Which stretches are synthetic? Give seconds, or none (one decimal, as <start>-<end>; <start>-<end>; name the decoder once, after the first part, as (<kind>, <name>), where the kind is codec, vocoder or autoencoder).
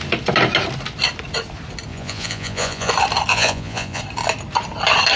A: 1.9-2.9 (vocoder, Vocos); 3.3-4.0